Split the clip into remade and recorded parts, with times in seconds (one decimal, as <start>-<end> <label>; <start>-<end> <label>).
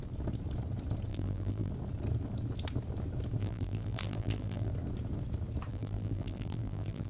0.0-1.1 recorded; 1.1-1.7 remade; 1.7-3.4 recorded; 3.4-4.7 remade; 4.7-5.7 recorded; 5.7-7.1 remade